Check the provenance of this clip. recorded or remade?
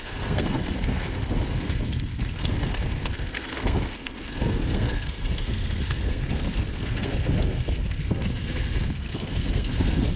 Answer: remade